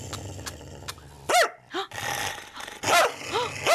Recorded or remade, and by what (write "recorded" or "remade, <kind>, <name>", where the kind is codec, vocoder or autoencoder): recorded